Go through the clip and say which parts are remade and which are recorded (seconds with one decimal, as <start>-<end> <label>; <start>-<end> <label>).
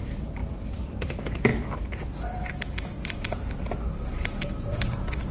0.0-0.4 remade; 0.4-1.0 recorded; 1.0-1.5 remade; 1.5-4.7 recorded; 4.7-5.3 remade